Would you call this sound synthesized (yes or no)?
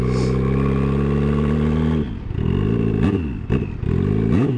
no